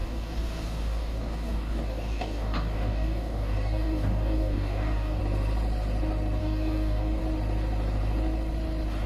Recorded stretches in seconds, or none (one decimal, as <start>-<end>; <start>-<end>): 5.2-6.4; 7.2-9.1